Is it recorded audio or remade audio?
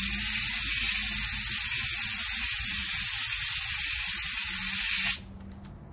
recorded